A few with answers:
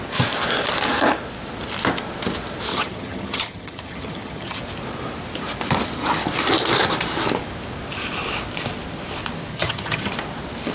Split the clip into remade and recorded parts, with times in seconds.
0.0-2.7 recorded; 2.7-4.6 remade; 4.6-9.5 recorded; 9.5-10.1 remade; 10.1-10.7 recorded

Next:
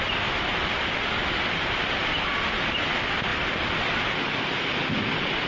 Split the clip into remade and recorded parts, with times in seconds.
0.0-5.5 recorded

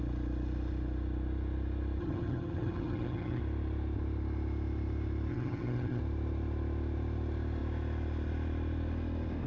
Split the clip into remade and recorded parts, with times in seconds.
0.0-2.0 recorded; 2.0-3.4 remade; 3.4-5.3 recorded; 5.3-6.0 remade; 6.0-9.5 recorded

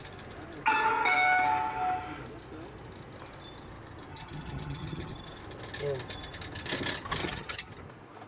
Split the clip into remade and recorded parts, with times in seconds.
0.0-4.1 recorded; 4.1-5.1 remade; 5.1-7.2 recorded; 7.2-7.7 remade; 7.7-8.3 recorded